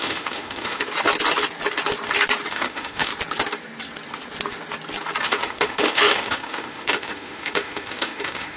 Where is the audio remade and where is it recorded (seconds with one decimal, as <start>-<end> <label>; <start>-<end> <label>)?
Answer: 0.0-0.9 remade; 0.9-2.5 recorded; 2.5-3.1 remade; 3.1-5.2 recorded; 5.2-8.6 remade